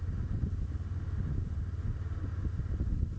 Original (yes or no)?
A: yes